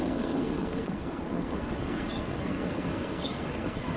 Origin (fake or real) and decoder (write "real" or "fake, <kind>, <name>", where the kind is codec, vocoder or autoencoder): fake, codec, SNAC